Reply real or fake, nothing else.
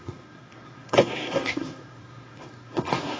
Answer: fake